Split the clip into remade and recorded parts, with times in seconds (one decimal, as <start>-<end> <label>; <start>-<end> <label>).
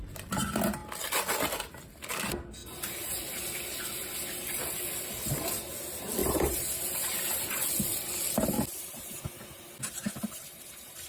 0.0-6.2 recorded; 6.2-7.6 remade; 7.6-11.1 recorded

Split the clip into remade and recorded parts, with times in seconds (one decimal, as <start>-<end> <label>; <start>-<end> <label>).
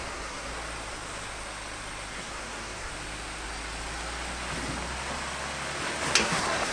0.0-0.5 remade; 0.5-2.1 recorded; 2.1-2.9 remade; 2.9-6.2 recorded; 6.2-6.7 remade